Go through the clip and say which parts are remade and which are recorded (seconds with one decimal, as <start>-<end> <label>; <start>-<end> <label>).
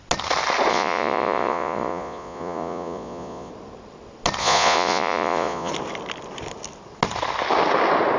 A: 0.0-0.7 recorded; 0.7-3.5 remade; 3.5-4.4 recorded; 4.4-5.7 remade; 5.7-8.2 recorded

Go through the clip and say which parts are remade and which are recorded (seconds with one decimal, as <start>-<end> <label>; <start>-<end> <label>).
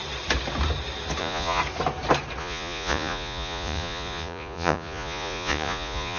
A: 0.0-1.2 recorded; 1.2-1.6 remade; 1.6-2.4 recorded; 2.4-6.2 remade